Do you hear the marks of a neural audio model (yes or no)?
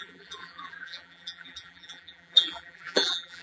yes